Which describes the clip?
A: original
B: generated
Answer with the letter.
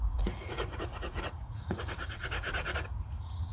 B